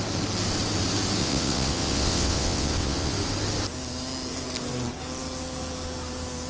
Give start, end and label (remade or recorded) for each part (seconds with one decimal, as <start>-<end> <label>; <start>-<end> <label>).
0.0-1.2 recorded; 1.2-3.1 remade; 3.1-6.5 recorded